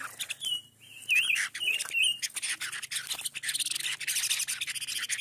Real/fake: real